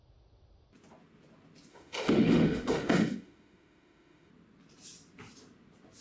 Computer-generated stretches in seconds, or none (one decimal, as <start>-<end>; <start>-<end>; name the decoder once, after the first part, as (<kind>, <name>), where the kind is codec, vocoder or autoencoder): 1.7-4.3 (autoencoder, DAC-VAE)